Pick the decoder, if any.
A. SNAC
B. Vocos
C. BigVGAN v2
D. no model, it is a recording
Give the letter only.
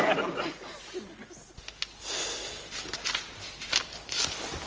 D